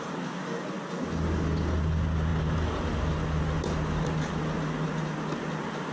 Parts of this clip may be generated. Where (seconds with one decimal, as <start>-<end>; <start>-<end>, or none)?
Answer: none